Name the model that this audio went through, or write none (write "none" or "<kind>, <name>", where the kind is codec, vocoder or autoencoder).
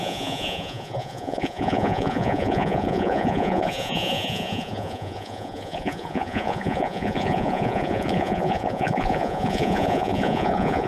vocoder, Vocos